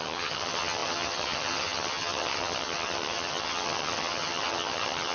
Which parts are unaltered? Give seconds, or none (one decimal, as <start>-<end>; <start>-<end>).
none